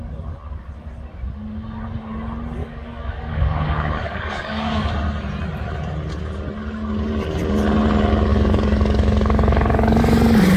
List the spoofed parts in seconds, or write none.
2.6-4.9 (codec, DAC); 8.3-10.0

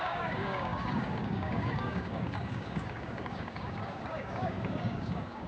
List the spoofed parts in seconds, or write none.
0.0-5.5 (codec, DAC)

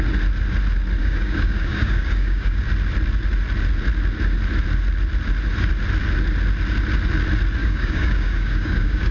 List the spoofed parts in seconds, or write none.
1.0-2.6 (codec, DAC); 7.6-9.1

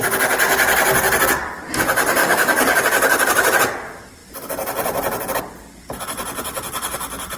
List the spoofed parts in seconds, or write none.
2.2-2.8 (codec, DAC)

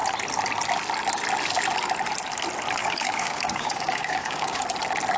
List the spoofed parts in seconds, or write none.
2.8-4.6 (codec, DAC)

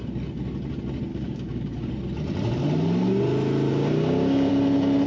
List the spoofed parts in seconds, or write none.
1.1-1.9 (codec, DAC); 3.7-4.5